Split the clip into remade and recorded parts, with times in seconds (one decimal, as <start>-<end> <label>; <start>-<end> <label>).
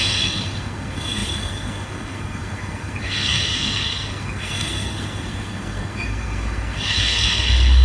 0.0-7.8 remade